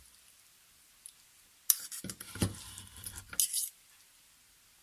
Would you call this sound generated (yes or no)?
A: no